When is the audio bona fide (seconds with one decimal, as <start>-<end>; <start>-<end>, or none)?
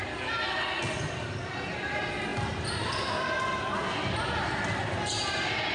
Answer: 0.0-5.7